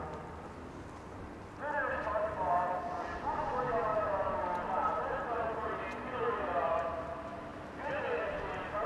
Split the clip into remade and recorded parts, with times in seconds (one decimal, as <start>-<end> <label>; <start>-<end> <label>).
0.0-8.9 recorded